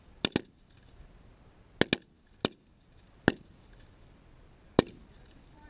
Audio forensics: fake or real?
real